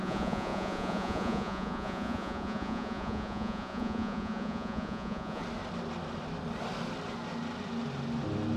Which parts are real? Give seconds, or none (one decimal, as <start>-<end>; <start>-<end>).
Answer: 5.4-8.6